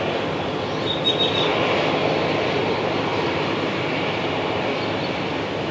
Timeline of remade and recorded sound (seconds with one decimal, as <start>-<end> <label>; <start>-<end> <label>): 0.0-0.5 remade; 0.5-1.1 recorded; 1.1-1.5 remade; 1.5-2.7 recorded; 2.7-3.1 remade; 3.1-5.0 recorded; 5.0-5.7 remade